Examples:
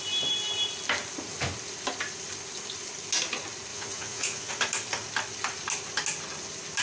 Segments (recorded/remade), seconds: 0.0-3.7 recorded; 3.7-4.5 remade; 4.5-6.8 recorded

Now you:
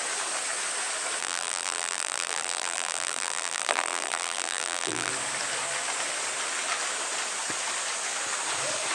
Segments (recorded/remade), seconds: 0.0-1.2 recorded; 1.2-5.1 remade; 5.1-8.9 recorded

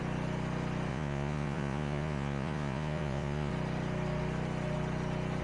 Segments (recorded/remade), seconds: 0.0-0.9 recorded; 0.9-3.5 remade; 3.5-5.4 recorded

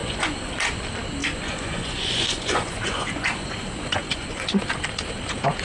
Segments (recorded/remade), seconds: 0.0-0.5 remade; 0.5-1.2 recorded; 1.2-4.6 remade; 4.6-5.6 recorded

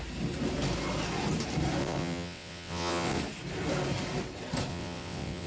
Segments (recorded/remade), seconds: 0.0-1.8 recorded; 1.8-3.2 remade; 3.2-4.7 recorded; 4.7-5.5 remade

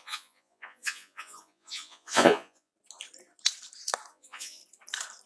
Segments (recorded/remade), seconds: 0.0-2.7 remade; 2.7-4.1 recorded; 4.1-4.6 remade; 4.6-5.3 recorded

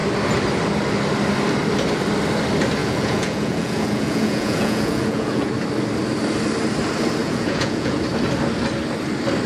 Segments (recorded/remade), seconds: 0.0-2.8 recorded; 2.8-5.5 remade; 5.5-7.2 recorded; 7.2-8.0 remade; 8.0-9.5 recorded